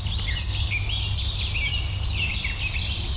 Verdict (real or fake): real